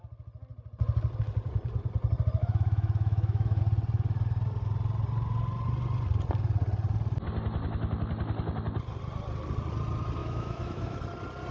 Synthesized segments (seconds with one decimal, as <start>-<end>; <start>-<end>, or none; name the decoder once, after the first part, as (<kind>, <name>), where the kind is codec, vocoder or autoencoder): 2.4-3.6 (autoencoder, DAC-VAE); 10.2-11.0